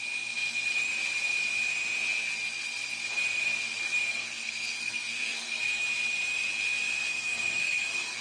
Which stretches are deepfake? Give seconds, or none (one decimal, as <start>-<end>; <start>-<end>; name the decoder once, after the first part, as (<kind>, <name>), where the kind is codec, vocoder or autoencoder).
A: 4.1-5.8 (codec, SNAC); 7.1-8.2